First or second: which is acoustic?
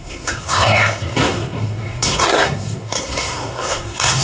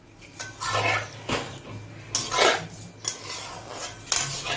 second